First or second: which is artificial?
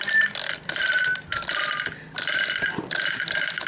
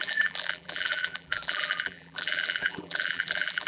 second